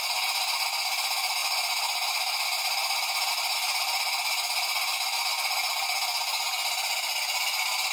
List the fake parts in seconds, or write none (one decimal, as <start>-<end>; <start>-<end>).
1.4-3.3